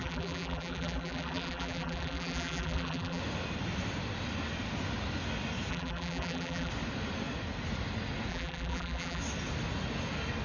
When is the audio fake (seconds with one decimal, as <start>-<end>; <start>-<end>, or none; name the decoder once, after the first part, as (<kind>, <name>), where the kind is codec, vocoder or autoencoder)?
0.0-3.2 (vocoder, BigVGAN v2); 5.7-6.7; 8.3-9.2